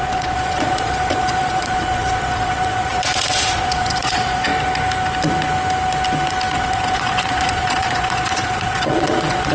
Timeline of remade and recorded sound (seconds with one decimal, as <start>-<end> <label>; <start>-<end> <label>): 0.0-4.5 remade; 4.5-6.5 recorded; 6.5-9.5 remade